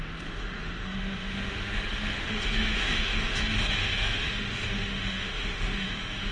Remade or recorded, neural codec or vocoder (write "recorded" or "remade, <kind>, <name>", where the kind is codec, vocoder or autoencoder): remade, autoencoder, DAC-VAE